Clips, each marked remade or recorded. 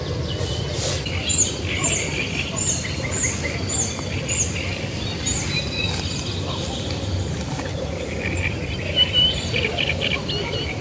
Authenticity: recorded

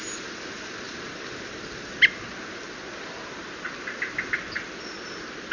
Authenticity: recorded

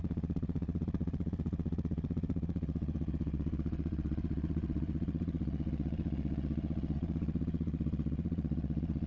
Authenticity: remade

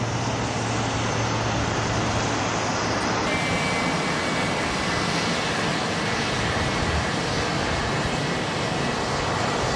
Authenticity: recorded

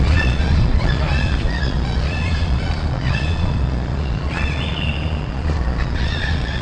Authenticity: remade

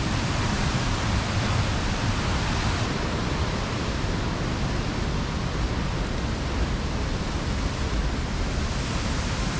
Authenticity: recorded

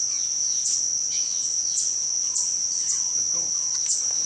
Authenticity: remade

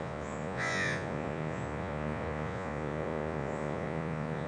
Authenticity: remade